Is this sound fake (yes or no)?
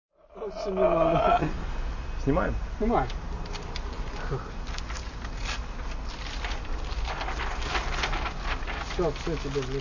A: no